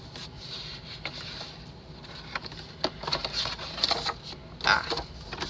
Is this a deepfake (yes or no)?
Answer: no